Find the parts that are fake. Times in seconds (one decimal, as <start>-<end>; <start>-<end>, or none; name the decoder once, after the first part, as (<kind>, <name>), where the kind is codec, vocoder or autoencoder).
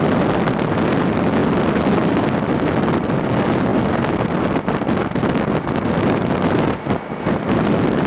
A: none